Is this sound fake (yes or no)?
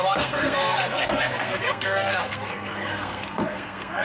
yes